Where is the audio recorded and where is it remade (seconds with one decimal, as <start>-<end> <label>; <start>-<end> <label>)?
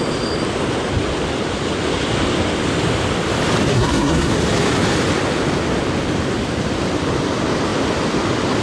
0.0-3.7 recorded; 3.7-4.3 remade; 4.3-8.6 recorded